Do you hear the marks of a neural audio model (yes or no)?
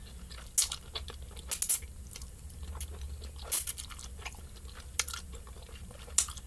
no